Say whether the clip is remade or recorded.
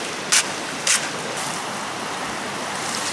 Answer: recorded